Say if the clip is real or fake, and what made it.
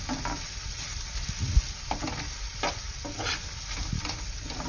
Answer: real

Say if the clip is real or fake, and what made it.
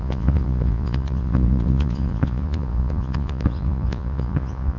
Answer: fake, vocoder, Vocos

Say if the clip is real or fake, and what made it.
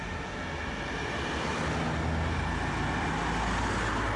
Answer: real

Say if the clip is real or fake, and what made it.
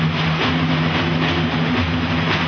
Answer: real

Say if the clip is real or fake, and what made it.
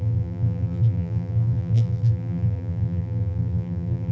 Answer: fake, vocoder, BigVGAN v2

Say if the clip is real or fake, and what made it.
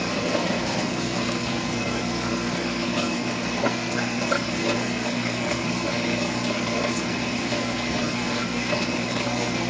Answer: fake, codec, SNAC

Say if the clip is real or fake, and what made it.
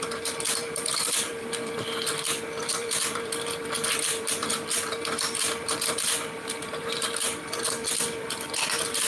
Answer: fake, vocoder, BigVGAN v2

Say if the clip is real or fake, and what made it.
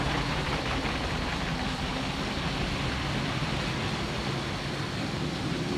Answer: real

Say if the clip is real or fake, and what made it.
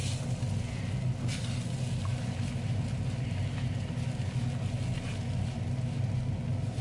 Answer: real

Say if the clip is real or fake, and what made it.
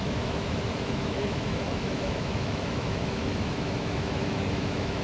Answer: fake, autoencoder, DAC-VAE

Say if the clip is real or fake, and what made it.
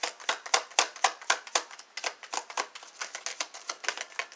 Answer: real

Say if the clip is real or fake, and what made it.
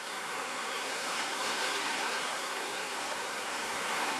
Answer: fake, codec, SNAC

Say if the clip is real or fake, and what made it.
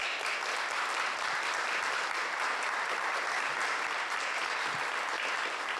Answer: real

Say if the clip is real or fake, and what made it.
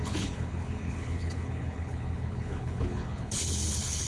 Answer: fake, codec, HILCodec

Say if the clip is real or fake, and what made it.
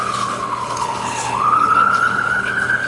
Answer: fake, codec, HILCodec